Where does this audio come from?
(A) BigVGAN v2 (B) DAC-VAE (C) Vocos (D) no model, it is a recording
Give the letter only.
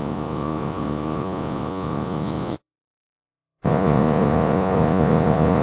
C